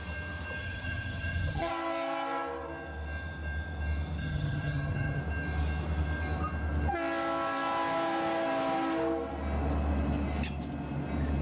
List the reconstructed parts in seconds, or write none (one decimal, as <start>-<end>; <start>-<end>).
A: 0.6-1.7; 4.2-5.2